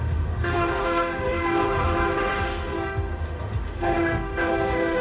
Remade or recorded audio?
remade